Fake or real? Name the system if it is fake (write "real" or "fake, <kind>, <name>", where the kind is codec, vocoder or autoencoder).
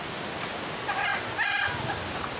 real